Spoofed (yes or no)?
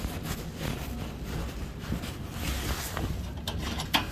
no